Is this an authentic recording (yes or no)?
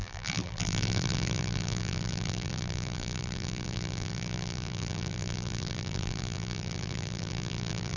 no